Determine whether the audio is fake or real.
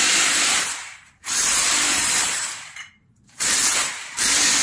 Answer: fake